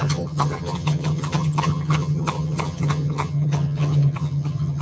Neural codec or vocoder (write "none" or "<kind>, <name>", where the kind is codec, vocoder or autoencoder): vocoder, HiFi-GAN